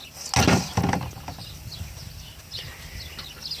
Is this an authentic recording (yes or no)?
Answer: yes